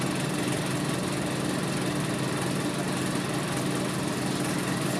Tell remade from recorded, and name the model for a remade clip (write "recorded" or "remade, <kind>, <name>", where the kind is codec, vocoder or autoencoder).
recorded